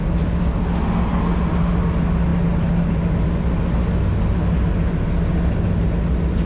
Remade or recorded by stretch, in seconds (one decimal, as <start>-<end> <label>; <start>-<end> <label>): 0.0-6.5 recorded